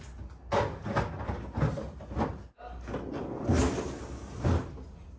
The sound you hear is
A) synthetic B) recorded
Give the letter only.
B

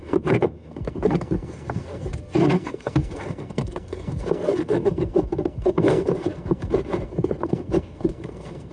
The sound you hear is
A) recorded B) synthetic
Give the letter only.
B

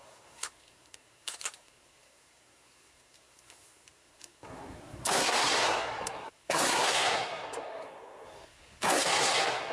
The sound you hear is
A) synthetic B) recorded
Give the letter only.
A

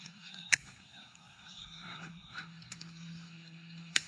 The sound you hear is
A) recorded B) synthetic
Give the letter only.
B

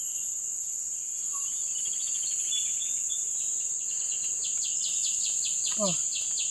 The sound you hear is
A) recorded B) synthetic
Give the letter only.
A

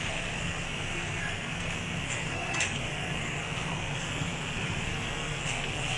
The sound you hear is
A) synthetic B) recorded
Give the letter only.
A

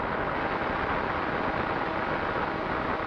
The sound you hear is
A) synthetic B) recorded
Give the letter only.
B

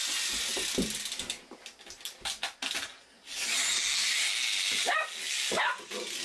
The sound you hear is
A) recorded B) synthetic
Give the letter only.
A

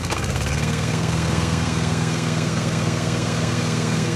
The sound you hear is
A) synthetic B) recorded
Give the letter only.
A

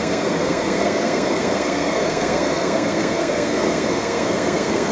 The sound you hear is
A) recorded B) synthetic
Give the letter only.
B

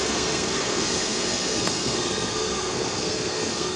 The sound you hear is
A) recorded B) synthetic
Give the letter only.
B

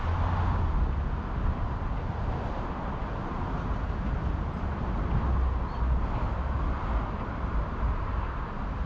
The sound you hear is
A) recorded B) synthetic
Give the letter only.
A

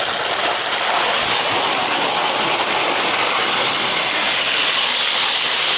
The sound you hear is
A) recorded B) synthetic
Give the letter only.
A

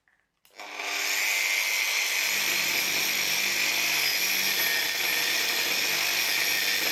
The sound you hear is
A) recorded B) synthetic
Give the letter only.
A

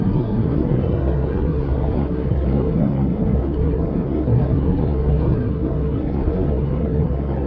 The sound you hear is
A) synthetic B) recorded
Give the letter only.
A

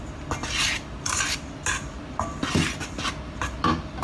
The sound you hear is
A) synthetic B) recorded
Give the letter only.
B